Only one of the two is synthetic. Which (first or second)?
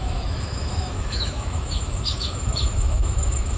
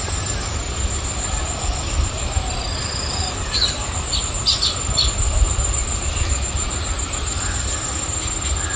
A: first